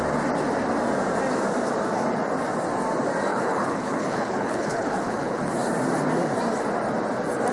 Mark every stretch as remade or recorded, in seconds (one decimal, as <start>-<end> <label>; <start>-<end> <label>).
0.0-3.3 recorded; 3.3-5.5 remade; 5.5-7.5 recorded